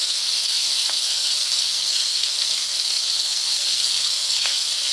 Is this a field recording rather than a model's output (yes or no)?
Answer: no